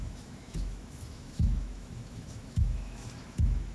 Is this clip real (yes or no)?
no